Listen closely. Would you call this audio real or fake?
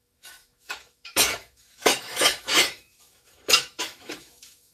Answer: fake